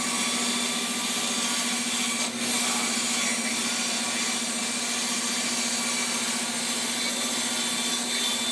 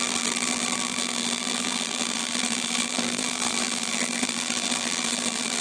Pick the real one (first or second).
first